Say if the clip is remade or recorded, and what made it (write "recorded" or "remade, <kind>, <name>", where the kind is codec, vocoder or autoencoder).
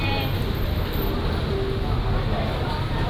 recorded